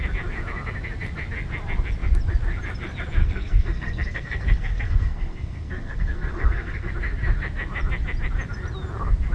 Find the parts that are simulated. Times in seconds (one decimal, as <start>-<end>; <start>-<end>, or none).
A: 3.2-6.9

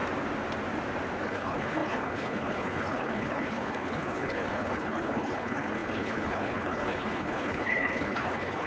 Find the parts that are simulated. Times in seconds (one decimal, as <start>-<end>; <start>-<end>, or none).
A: 1.2-8.7

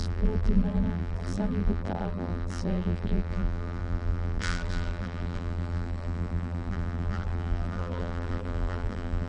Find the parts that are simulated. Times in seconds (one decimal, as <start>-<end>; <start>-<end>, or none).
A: 0.0-9.3

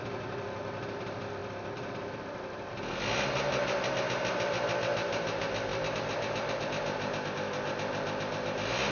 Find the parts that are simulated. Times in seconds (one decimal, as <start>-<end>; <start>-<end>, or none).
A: none

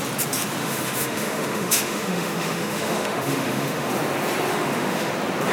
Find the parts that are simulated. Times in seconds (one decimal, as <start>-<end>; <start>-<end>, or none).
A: 0.6-3.9; 4.5-5.1

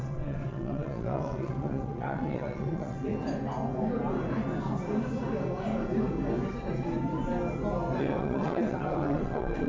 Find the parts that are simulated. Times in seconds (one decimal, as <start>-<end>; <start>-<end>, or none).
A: 0.0-3.1; 8.0-9.7

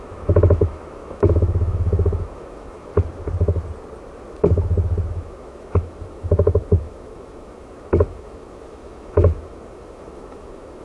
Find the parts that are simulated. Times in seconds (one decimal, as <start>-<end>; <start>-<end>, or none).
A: 0.0-2.9; 5.1-10.8